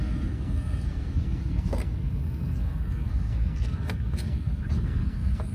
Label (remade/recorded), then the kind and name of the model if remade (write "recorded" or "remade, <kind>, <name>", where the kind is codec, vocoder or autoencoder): remade, codec, SNAC